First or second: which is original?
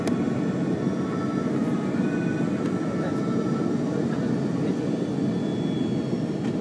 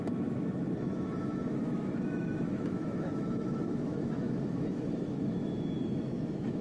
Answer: first